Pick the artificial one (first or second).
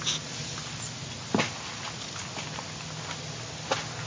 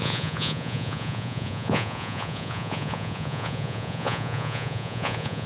second